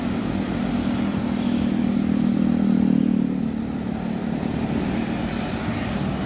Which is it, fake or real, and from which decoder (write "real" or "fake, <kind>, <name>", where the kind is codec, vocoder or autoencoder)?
real